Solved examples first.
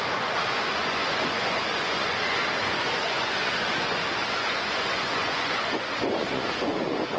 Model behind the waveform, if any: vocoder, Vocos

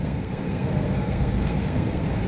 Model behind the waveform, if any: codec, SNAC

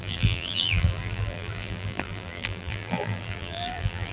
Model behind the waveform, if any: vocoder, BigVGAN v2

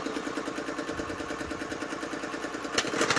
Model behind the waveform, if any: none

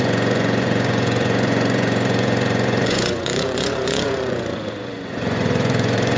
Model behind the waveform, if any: vocoder, Vocos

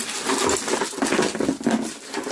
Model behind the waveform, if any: none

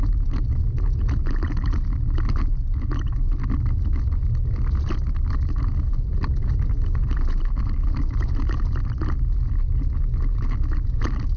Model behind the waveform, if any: none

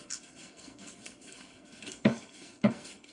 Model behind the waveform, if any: codec, SNAC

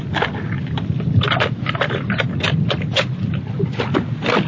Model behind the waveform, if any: none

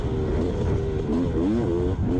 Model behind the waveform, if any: none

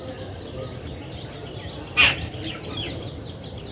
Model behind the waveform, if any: none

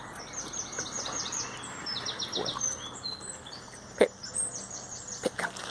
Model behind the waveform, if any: none